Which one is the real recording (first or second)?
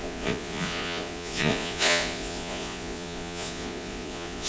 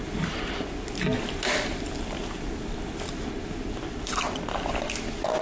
second